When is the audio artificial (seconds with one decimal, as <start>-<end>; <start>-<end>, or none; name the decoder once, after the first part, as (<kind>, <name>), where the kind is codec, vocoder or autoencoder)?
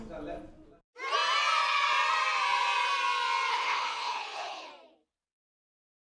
3.5-4.7 (codec, HILCodec)